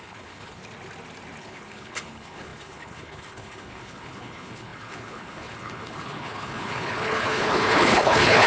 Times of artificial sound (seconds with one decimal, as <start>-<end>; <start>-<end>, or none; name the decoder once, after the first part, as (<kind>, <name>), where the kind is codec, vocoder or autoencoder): 0.0-0.6 (codec, HILCodec); 1.4-8.5